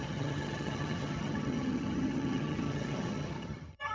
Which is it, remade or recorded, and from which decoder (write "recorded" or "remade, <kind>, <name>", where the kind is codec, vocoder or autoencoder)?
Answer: remade, vocoder, HiFi-GAN